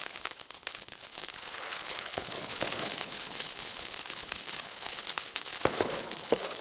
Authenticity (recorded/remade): remade